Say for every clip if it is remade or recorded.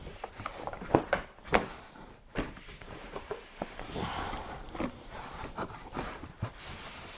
remade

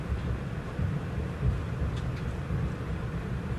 recorded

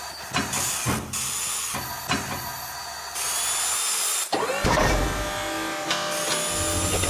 recorded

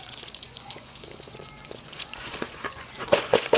remade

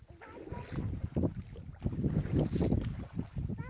recorded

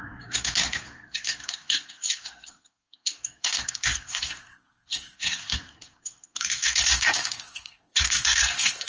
remade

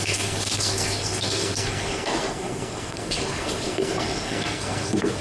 remade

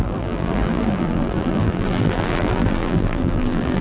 remade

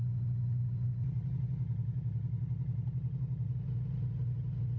recorded